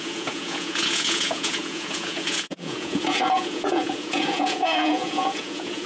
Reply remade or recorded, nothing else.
remade